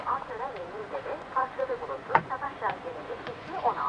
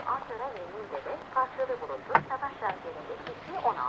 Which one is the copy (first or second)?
first